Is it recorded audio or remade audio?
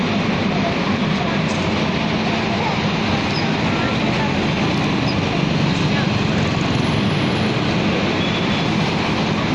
recorded